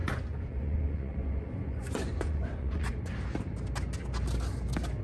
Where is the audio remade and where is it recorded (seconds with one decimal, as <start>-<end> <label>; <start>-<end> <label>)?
0.0-3.0 remade; 3.0-5.0 recorded